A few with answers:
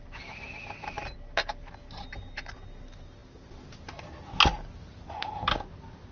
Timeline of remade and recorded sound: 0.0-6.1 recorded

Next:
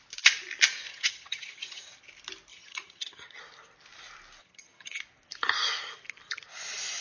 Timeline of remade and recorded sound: 0.0-0.9 recorded; 0.9-1.9 remade; 1.9-2.5 recorded; 2.5-3.4 remade; 3.4-4.4 recorded; 4.4-5.0 remade; 5.0-7.0 recorded

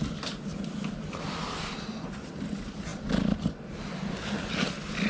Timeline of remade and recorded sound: 0.0-5.1 recorded